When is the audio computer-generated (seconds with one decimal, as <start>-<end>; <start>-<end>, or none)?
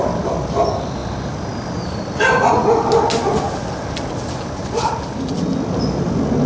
none